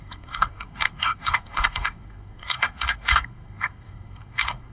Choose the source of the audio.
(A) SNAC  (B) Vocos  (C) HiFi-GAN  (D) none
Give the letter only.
A